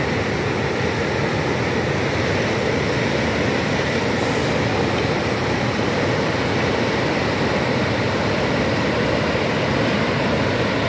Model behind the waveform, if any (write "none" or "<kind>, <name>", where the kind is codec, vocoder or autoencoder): none